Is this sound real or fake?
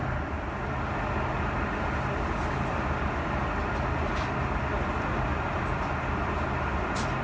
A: real